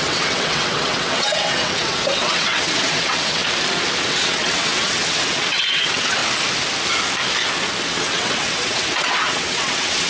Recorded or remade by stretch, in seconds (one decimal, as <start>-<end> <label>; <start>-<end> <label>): 0.0-3.4 remade; 3.4-4.0 recorded; 4.0-6.2 remade; 6.2-7.9 recorded; 7.9-10.1 remade